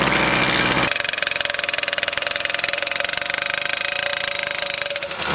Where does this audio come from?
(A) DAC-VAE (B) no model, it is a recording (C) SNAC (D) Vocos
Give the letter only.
B